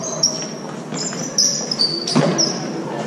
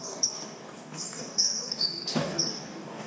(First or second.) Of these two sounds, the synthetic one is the second